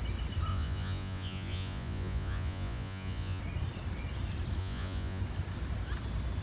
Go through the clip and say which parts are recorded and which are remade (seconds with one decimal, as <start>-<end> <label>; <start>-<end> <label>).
0.0-0.5 recorded; 0.5-3.4 remade; 3.4-4.6 recorded; 4.6-5.2 remade; 5.2-6.4 recorded